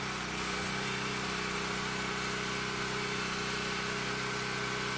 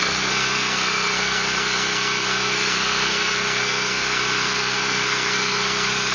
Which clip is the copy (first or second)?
second